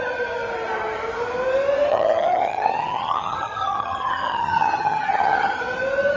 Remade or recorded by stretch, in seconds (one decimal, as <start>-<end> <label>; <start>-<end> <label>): 0.0-1.9 recorded; 1.9-5.6 remade; 5.6-6.2 recorded